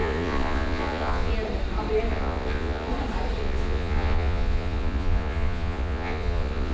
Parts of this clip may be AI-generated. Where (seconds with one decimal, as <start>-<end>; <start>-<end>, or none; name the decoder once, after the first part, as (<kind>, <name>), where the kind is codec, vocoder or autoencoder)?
0.0-1.3 (vocoder, Vocos); 2.1-2.9; 3.4-6.7